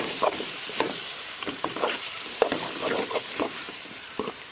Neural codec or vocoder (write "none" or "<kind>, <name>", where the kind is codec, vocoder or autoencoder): vocoder, BigVGAN v2